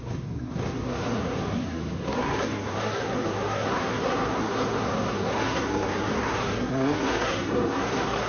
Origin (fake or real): fake